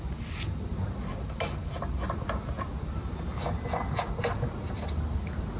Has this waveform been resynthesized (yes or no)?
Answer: no